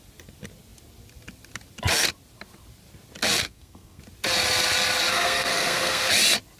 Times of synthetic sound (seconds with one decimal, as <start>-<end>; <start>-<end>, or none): 3.4-4.0; 5.1-6.1